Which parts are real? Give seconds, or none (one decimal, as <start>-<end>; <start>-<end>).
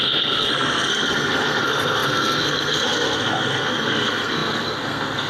none